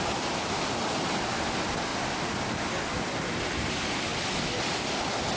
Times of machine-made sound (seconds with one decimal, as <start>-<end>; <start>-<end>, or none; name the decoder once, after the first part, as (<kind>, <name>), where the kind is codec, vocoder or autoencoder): none